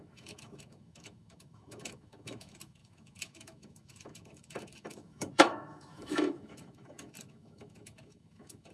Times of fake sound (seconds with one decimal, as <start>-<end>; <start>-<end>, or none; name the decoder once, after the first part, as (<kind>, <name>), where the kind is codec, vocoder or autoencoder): 0.0-8.7 (autoencoder, DAC-VAE)